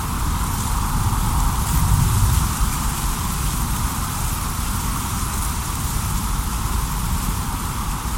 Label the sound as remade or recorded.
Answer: remade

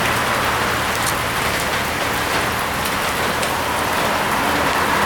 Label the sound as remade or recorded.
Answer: recorded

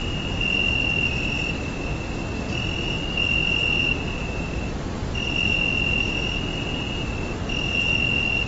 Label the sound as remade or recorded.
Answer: recorded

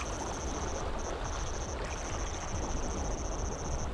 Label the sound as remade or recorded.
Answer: recorded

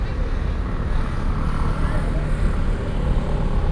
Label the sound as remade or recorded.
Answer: recorded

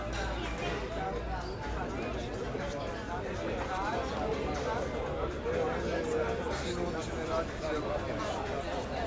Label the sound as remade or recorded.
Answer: recorded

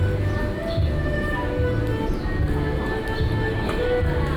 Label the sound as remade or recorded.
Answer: recorded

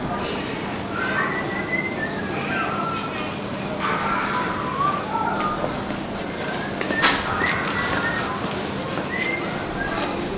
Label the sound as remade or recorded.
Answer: recorded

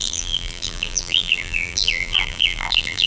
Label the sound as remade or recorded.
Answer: remade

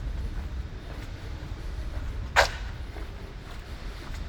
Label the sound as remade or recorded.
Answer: remade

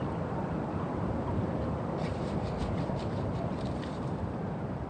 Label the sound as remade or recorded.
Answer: remade